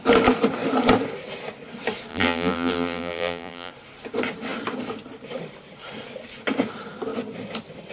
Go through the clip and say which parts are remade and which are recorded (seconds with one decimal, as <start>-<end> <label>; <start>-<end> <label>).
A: 0.0-2.1 recorded; 2.1-3.7 remade; 3.7-7.9 recorded

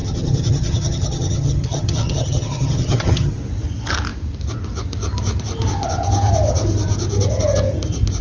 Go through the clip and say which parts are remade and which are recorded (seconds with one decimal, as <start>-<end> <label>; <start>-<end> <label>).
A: 0.0-3.3 remade; 3.3-8.2 recorded

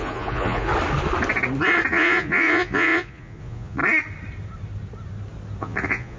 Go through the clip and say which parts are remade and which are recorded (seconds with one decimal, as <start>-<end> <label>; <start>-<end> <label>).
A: 0.0-0.7 remade; 0.7-1.9 recorded; 1.9-3.8 remade; 3.8-5.6 recorded; 5.6-6.2 remade

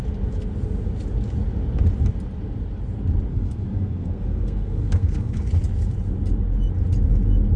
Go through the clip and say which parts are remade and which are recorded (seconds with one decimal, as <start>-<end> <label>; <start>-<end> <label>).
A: 0.0-3.3 recorded; 3.3-5.4 remade; 5.4-7.6 recorded

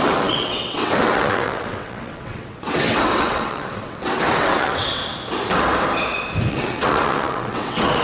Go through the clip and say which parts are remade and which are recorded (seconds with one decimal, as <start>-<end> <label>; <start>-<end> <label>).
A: 0.0-5.0 remade; 5.0-6.5 recorded; 6.5-8.0 remade

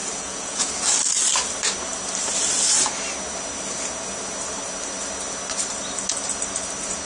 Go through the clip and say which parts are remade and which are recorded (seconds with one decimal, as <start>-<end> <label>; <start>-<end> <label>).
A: 0.0-0.7 remade; 0.7-7.0 recorded

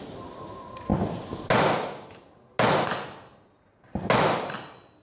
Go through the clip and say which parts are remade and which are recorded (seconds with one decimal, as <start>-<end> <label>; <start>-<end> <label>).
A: 0.0-5.0 recorded

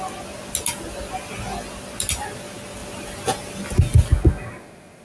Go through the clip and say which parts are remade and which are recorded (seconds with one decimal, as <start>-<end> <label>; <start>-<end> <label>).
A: 0.0-5.0 recorded